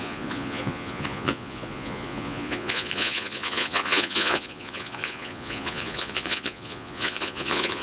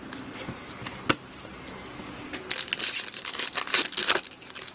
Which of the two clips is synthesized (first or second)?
first